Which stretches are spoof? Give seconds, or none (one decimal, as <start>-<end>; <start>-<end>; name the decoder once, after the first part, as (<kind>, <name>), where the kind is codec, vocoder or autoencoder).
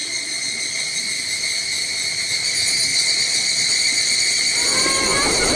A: 0.0-1.0 (vocoder, Vocos); 2.9-4.6